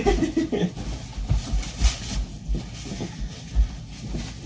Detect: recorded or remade recorded